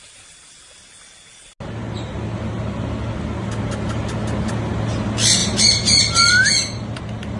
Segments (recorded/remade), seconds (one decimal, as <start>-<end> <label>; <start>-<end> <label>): 0.0-5.4 recorded; 5.4-7.0 remade; 7.0-7.4 recorded